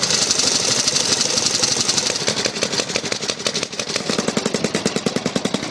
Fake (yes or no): no